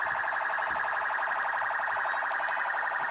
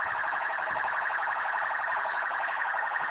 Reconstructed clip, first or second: second